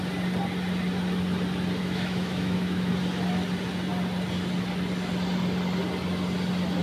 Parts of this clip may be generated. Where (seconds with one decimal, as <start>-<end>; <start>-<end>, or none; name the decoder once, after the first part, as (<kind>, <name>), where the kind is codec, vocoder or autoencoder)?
1.8-2.9 (autoencoder, DAC-VAE)